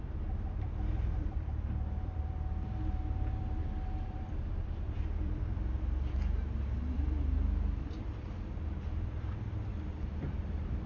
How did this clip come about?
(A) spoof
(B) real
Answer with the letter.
A